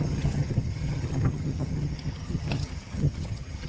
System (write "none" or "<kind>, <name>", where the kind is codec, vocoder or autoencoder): vocoder, HiFi-GAN